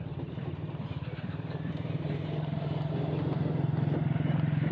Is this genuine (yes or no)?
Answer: no